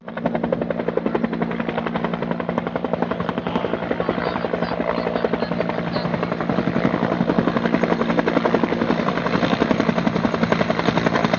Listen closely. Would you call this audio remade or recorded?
recorded